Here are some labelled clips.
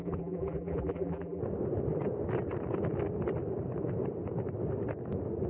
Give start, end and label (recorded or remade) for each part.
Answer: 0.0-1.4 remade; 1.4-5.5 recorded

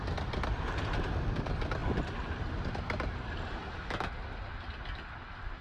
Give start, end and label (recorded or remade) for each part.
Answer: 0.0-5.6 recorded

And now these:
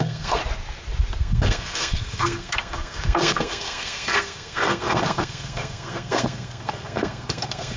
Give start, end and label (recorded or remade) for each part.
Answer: 0.0-0.4 remade; 0.4-1.2 recorded; 1.2-7.8 remade